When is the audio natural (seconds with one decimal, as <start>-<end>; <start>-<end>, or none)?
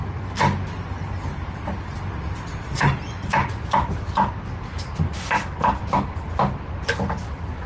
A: 0.0-7.7